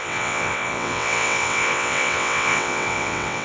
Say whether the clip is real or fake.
fake